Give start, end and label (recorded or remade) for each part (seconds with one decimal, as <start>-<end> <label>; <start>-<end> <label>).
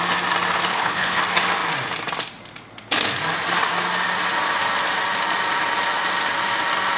0.0-0.7 recorded; 0.7-1.2 remade; 1.2-7.0 recorded